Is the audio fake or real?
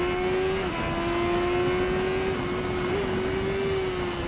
real